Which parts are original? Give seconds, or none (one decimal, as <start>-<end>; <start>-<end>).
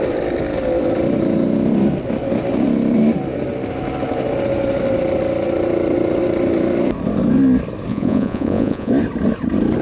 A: 0.0-7.9; 8.9-9.8